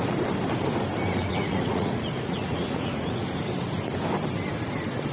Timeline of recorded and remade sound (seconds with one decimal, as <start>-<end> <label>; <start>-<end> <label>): 0.0-1.2 recorded; 1.2-3.4 remade; 3.4-5.1 recorded